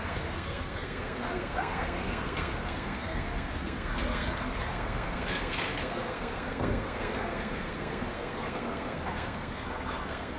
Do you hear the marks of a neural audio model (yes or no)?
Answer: yes